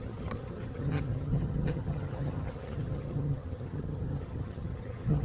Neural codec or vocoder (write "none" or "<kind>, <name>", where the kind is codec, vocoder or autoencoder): vocoder, HiFi-GAN